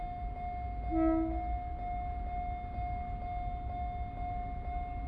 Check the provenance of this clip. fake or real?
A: real